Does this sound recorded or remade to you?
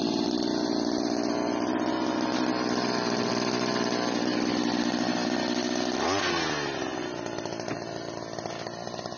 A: recorded